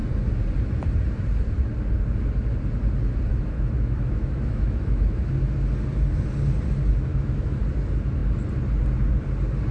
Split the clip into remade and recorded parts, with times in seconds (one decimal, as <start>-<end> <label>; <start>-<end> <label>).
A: 0.0-3.3 recorded; 3.3-5.3 remade; 5.3-7.1 recorded; 7.1-7.6 remade; 7.6-9.7 recorded